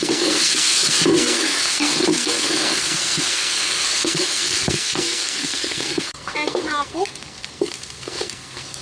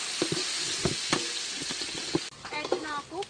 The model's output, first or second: first